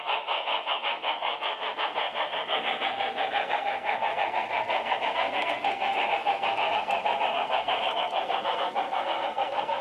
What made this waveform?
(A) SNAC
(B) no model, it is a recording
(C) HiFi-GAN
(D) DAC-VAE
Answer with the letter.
A